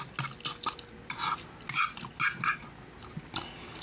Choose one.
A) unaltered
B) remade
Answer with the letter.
A